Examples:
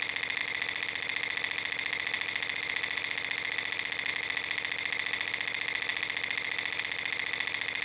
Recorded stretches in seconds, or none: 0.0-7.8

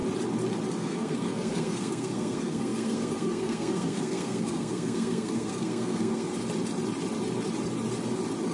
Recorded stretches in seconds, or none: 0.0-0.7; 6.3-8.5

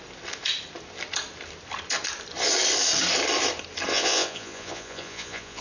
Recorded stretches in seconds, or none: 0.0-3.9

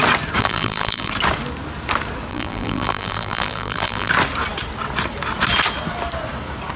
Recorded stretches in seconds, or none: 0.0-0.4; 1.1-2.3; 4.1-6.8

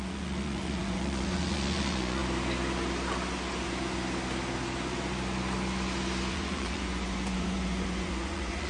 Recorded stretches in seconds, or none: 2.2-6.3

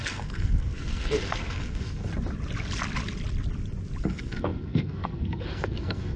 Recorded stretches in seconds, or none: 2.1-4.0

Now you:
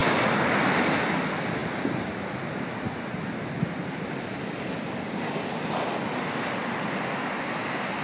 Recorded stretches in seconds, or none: 0.0-8.0